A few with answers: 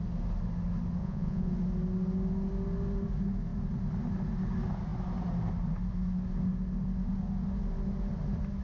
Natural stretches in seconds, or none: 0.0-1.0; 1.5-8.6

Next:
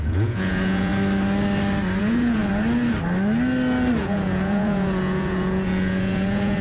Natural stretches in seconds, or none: 0.9-2.0; 2.4-4.0

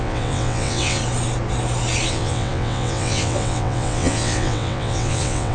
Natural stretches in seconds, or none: 1.0-2.1

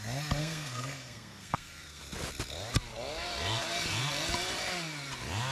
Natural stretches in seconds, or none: 0.0-0.4; 2.0-5.5

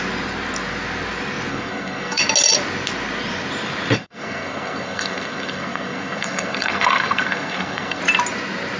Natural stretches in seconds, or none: 0.0-1.5; 2.2-4.0; 8.0-8.8

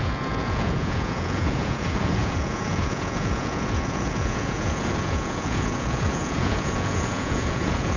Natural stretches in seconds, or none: none

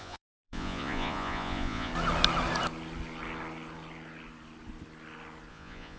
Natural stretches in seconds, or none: 1.9-5.5